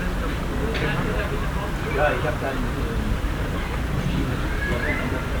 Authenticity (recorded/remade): recorded